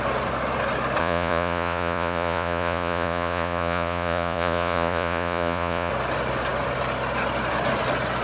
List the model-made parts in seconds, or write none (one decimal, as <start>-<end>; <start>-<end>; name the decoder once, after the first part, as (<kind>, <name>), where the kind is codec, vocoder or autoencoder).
1.0-5.9 (vocoder, Vocos)